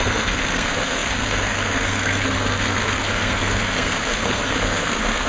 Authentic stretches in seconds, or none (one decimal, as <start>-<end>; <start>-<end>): none